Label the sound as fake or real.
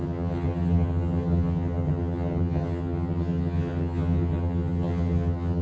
fake